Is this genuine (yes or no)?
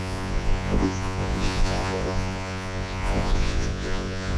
no